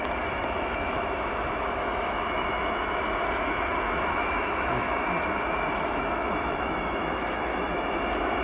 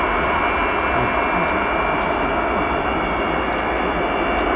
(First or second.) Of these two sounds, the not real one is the first